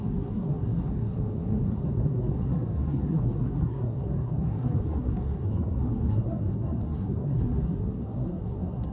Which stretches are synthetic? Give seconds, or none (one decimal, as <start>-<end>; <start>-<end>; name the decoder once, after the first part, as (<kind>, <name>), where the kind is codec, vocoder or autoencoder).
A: 0.0-8.9 (codec, SNAC)

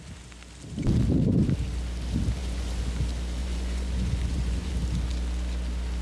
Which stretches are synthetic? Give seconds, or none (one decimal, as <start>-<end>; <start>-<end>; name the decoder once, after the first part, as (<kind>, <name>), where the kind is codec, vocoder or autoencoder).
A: 2.4-3.0 (vocoder, Vocos); 3.4-4.7

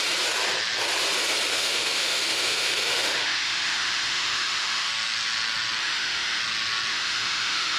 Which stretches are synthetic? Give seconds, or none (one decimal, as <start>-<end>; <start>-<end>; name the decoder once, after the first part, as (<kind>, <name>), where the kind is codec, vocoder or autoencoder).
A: 1.5-4.9 (autoencoder, DAC-VAE); 5.8-6.4; 6.9-7.8

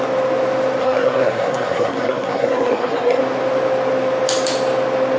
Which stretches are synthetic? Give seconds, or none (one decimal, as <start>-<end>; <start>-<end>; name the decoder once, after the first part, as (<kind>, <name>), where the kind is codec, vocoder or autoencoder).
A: 0.8-3.2 (codec, SNAC)

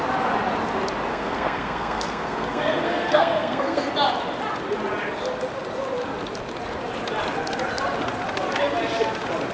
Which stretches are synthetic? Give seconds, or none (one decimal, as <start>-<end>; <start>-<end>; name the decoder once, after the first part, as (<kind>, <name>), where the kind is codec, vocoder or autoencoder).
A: 1.1-3.9 (codec, SNAC)

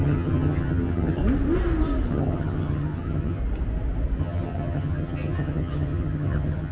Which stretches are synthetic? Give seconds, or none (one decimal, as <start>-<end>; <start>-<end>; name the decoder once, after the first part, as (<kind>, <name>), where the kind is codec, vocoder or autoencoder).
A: 0.0-1.2 (vocoder, HiFi-GAN); 2.1-3.4; 4.2-6.7

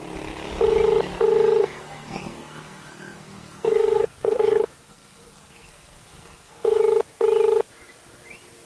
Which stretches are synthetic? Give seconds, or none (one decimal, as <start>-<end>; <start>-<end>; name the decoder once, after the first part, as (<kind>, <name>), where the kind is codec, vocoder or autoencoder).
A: 1.6-6.8 (codec, SNAC)